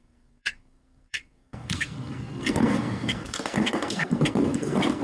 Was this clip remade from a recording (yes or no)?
yes